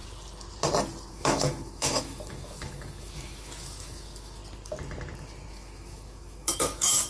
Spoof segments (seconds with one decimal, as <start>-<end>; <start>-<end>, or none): 1.1-4.4; 5.5-7.1